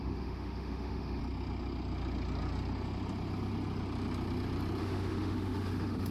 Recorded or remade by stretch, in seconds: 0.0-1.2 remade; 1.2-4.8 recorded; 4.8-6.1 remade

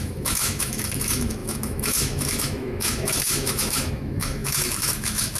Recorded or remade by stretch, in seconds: 0.0-5.4 remade

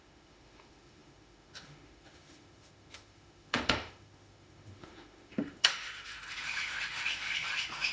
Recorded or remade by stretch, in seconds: 0.0-7.9 remade

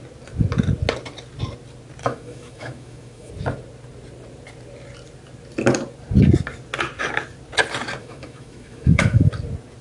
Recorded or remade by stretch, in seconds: 0.0-2.0 recorded; 2.0-3.3 remade; 3.3-8.0 recorded; 8.0-9.3 remade; 9.3-9.8 recorded

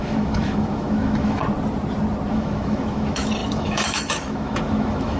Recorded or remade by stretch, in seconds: 0.0-1.4 remade; 1.4-2.3 recorded; 2.3-5.2 remade

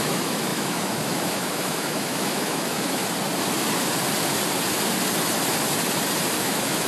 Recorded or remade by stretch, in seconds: 0.0-3.0 remade; 3.0-6.4 recorded; 6.4-6.9 remade

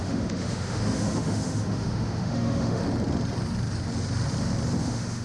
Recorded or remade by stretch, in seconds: 0.0-2.8 remade; 2.8-4.8 recorded; 4.8-5.2 remade